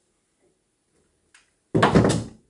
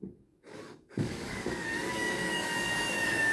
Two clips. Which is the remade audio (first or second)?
second